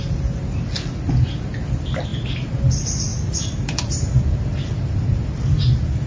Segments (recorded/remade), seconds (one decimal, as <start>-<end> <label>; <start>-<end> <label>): 0.0-6.1 recorded